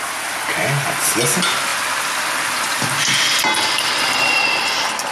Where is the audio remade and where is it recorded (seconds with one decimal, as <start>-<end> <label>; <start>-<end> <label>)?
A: 0.0-5.1 recorded